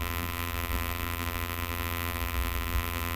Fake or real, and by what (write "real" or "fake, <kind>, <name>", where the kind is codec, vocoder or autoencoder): fake, vocoder, BigVGAN v2